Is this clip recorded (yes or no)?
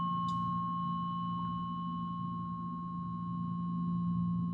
yes